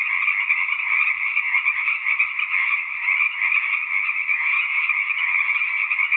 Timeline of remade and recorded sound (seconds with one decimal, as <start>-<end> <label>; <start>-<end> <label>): 0.0-4.3 recorded; 4.3-4.8 remade; 4.8-6.2 recorded